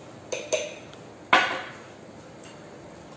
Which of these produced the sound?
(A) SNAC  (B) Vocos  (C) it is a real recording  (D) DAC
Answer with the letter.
C